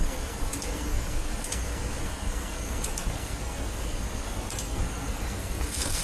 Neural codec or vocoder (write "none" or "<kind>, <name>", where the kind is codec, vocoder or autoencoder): codec, SNAC